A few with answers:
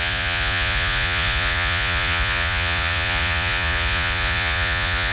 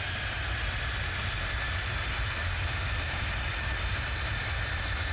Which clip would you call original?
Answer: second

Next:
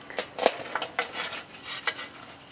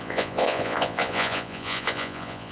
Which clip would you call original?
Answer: first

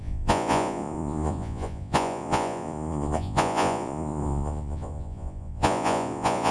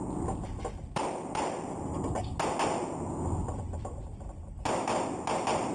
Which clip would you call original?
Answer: second